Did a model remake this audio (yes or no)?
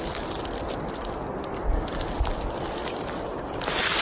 no